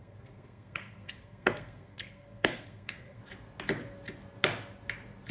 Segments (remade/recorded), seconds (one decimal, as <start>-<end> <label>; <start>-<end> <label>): 0.0-3.2 remade; 3.2-5.3 recorded